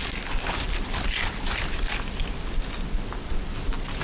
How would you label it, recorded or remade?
recorded